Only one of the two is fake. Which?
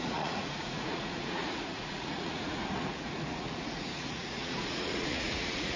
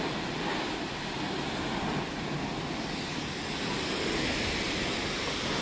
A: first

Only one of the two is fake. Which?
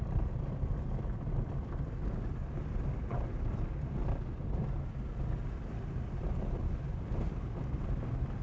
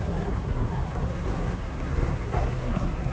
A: second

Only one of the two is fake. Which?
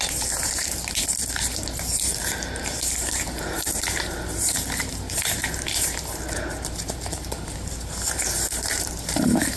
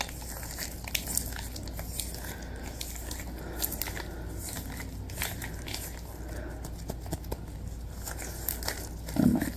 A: first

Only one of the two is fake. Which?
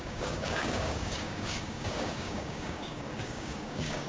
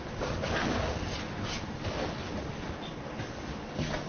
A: first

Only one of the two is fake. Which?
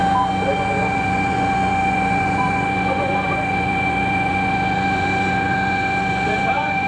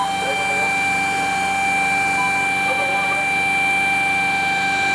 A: first